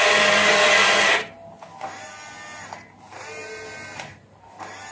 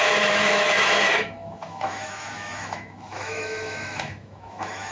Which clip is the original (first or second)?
first